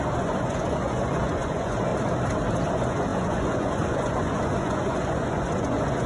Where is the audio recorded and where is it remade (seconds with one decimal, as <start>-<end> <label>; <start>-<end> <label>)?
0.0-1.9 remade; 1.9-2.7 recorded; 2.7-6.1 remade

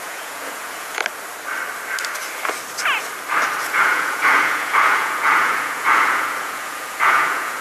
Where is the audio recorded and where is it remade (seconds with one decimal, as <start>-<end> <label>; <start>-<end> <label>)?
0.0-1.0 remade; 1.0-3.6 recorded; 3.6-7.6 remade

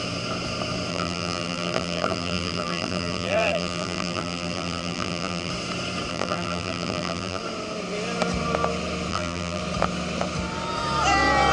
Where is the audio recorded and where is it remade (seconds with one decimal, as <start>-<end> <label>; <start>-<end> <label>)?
0.0-0.9 recorded; 0.9-5.5 remade; 5.5-6.1 recorded; 6.1-7.4 remade; 7.4-9.1 recorded; 9.1-9.6 remade; 9.6-11.5 recorded

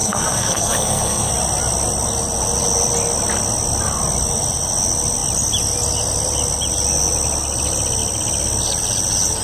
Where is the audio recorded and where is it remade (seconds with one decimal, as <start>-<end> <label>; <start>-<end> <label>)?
0.0-1.3 remade; 1.3-9.4 recorded

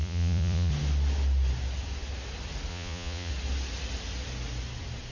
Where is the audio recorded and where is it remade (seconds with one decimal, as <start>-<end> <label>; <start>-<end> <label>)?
0.0-0.7 remade; 0.7-2.7 recorded; 2.7-3.3 remade; 3.3-5.1 recorded

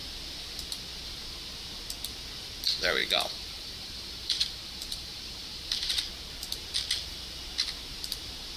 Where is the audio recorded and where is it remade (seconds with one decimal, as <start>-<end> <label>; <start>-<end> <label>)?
0.0-3.0 recorded; 3.0-6.0 remade; 6.0-8.6 recorded

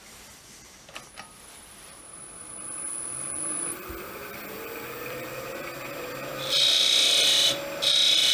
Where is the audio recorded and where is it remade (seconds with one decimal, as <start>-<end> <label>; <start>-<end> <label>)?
0.0-2.9 remade; 2.9-3.5 recorded; 3.5-6.3 remade; 6.3-7.1 recorded; 7.1-8.3 remade

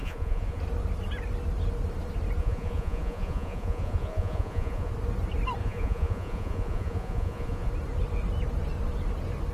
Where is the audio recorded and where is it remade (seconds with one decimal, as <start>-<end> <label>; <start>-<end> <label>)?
0.0-0.6 remade; 0.6-2.4 recorded; 2.4-4.9 remade; 4.9-5.6 recorded; 5.6-7.7 remade; 7.7-9.5 recorded